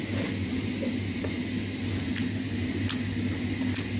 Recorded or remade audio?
recorded